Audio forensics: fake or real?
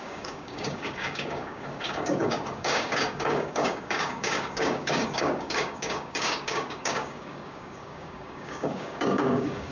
fake